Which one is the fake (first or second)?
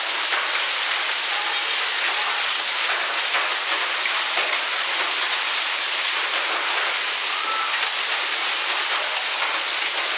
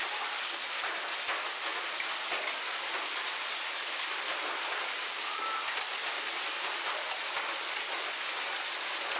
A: second